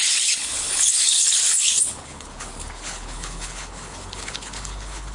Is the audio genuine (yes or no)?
no